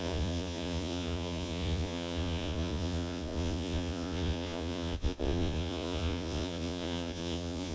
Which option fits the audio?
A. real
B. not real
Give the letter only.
B